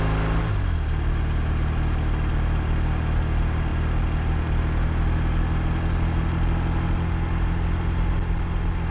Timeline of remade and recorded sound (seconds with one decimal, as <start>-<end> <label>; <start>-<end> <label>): 0.0-8.9 recorded